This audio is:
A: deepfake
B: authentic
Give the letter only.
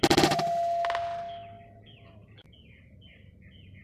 B